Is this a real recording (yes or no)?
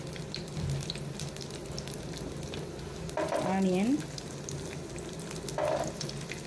yes